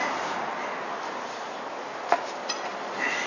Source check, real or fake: real